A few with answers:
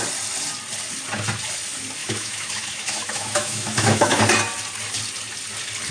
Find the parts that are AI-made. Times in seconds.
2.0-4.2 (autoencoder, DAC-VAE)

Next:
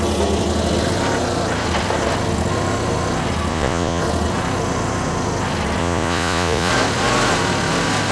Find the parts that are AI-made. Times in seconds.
3.5-4.0 (vocoder, Vocos); 5.8-6.7

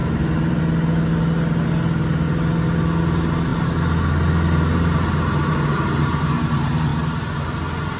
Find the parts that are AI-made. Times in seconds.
0.0-0.6 (vocoder, BigVGAN v2)